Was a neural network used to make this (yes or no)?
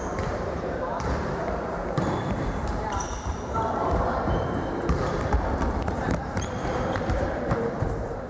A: yes